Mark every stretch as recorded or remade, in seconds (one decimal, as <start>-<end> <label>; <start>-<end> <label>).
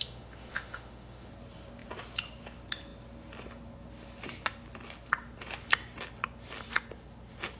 0.0-1.3 remade; 1.3-7.6 recorded